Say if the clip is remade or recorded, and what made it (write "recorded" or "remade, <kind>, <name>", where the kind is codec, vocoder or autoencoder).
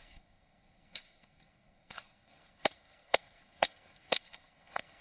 remade, codec, SNAC